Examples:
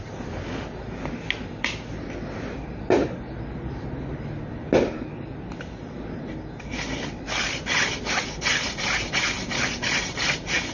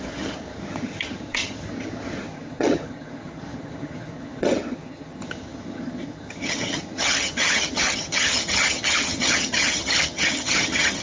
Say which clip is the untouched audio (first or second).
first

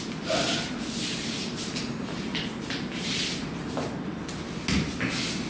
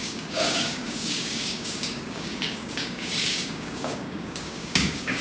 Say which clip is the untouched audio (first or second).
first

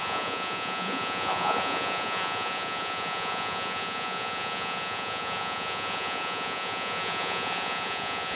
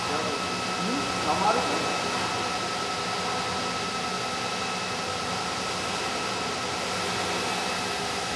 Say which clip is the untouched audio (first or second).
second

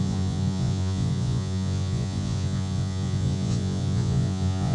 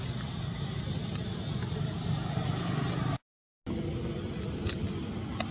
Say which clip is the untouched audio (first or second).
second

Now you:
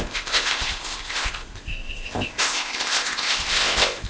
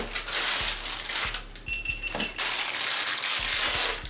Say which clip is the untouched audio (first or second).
second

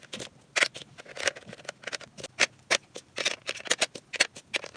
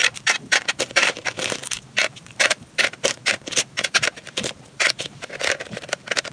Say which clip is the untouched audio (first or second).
first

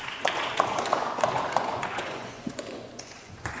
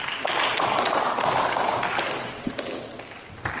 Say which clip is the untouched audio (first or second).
second